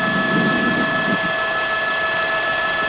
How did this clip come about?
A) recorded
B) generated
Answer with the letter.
A